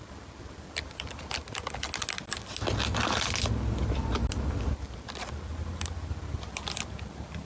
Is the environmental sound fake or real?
real